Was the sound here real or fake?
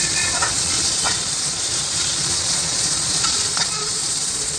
fake